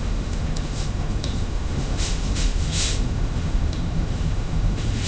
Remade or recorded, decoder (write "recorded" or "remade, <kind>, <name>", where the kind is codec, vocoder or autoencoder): remade, autoencoder, DAC-VAE